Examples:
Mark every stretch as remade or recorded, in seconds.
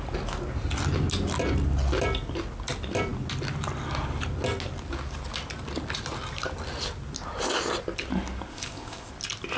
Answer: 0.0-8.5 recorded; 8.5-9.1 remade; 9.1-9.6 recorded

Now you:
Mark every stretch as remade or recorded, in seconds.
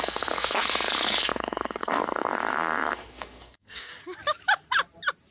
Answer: 0.0-3.9 remade; 3.9-5.3 recorded